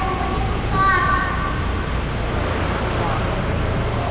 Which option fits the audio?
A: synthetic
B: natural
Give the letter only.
B